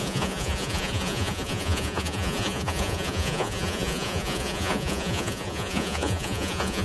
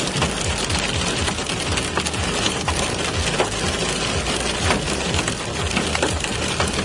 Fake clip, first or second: first